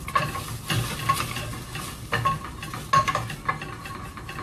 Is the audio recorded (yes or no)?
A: yes